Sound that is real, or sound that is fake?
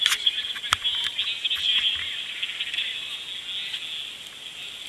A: real